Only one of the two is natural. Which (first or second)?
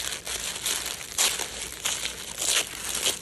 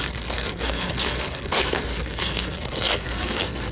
first